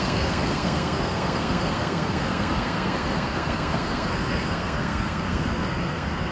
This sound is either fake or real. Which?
fake